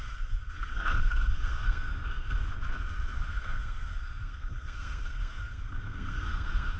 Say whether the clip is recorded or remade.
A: remade